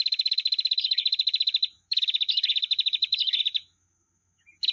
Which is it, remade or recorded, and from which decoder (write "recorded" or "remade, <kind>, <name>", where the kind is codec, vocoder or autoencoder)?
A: remade, autoencoder, DAC-VAE